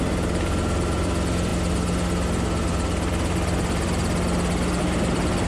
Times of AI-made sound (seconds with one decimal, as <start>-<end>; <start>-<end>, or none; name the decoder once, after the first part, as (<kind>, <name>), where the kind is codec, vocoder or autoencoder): none